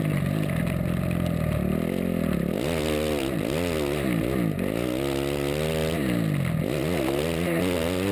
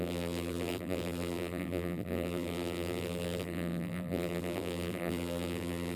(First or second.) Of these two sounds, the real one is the first